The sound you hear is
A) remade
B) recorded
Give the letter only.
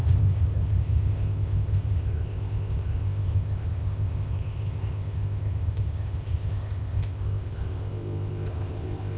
A